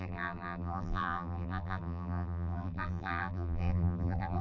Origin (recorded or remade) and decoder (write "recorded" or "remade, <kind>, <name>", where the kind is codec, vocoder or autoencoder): remade, vocoder, BigVGAN v2